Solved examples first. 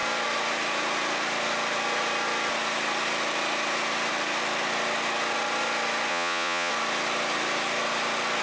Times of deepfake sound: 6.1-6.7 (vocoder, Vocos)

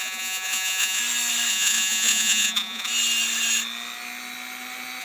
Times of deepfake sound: 0.0-1.0 (vocoder, Vocos); 1.5-2.9

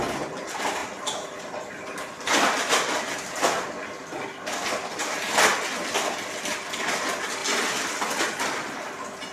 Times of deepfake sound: none

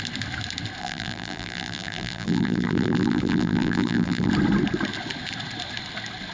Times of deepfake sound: 0.8-4.3 (vocoder, BigVGAN v2)

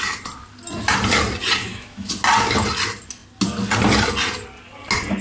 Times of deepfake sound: 1.6-2.1 (autoencoder, DAC-VAE)